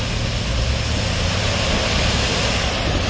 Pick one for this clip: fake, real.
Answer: real